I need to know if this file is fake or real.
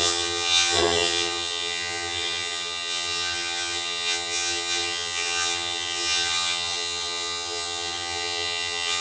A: fake